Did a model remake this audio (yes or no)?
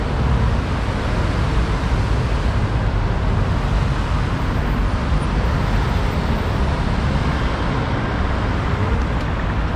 no